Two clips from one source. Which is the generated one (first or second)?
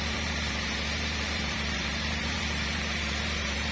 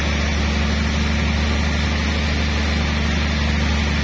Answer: first